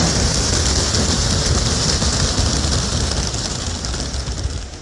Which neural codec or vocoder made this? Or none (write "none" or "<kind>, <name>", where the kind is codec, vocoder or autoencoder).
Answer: none